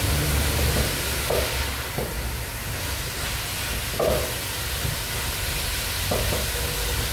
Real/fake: real